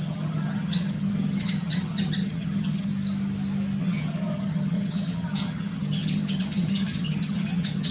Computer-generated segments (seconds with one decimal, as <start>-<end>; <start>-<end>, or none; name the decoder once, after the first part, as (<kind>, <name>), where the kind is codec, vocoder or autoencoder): 0.0-2.9 (vocoder, HiFi-GAN); 3.8-7.9